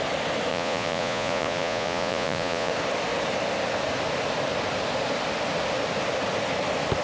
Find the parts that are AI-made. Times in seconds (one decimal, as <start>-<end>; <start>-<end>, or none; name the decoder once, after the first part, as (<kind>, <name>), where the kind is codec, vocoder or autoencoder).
0.5-2.7 (vocoder, Vocos)